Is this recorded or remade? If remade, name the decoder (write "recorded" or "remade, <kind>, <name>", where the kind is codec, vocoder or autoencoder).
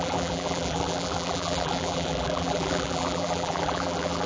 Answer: remade, vocoder, BigVGAN v2